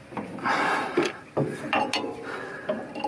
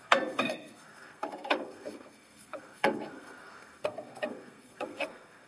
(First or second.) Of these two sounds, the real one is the first